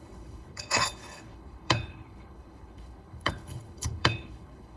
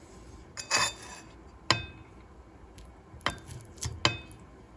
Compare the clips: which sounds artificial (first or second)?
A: first